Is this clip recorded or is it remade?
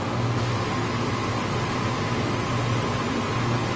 recorded